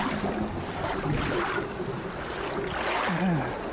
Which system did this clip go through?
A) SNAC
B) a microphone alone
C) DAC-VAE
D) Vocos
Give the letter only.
B